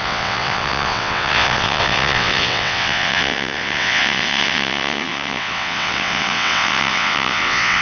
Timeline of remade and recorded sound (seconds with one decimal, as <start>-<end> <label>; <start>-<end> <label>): 0.0-7.8 remade